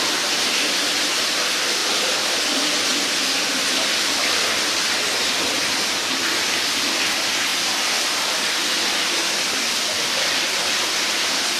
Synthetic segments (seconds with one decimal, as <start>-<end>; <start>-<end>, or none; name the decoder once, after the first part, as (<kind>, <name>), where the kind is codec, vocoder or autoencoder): 1.8-2.4 (vocoder, BigVGAN v2); 7.5-10.9